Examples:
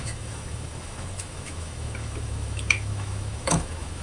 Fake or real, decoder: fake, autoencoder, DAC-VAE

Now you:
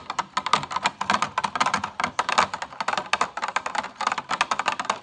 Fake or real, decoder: real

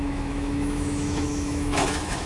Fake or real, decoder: fake, autoencoder, DAC-VAE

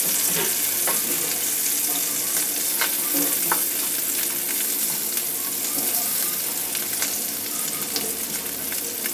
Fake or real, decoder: real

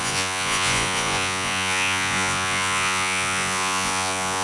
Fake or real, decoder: fake, vocoder, Vocos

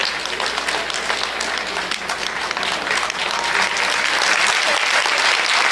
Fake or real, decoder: real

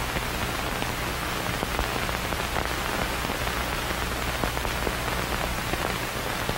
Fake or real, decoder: real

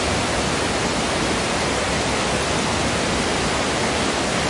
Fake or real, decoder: real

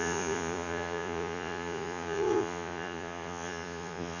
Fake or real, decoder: fake, vocoder, Vocos